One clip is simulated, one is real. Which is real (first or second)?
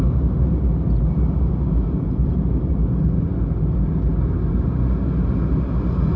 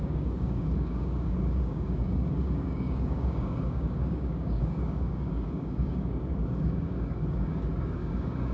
first